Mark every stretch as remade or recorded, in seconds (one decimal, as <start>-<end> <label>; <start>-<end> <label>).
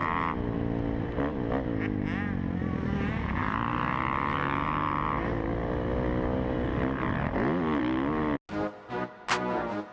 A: 0.0-9.9 recorded